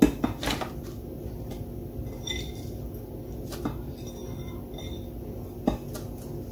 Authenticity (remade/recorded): recorded